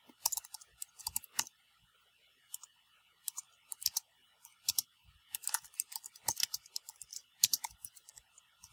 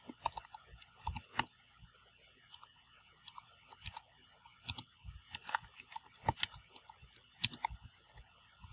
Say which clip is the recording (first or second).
second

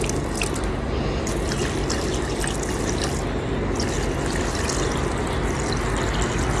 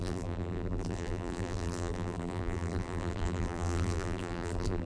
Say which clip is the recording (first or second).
first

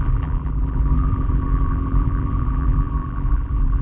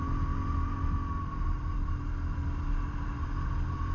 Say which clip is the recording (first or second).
second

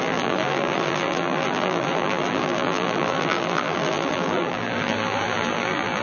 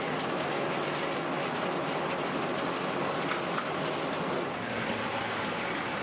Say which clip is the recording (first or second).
second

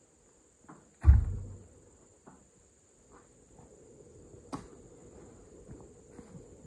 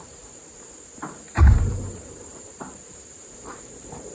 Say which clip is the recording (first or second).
first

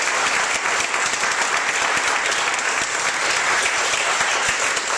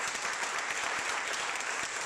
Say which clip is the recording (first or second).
first